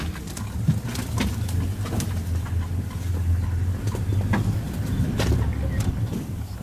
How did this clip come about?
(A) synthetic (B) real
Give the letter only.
B